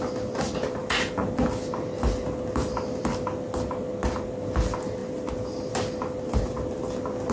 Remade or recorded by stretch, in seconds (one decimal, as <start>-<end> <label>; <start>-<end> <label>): 0.0-7.3 recorded